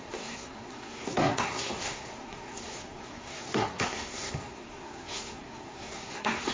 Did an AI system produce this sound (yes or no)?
yes